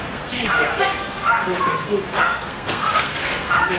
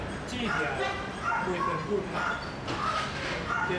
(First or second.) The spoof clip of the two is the first